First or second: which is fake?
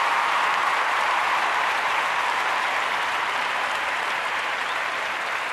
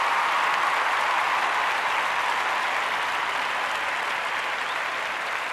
first